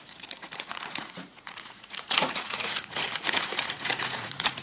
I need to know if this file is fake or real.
fake